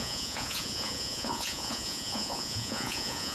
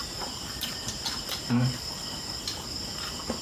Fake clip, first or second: first